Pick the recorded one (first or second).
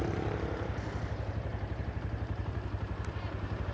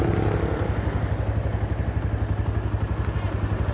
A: second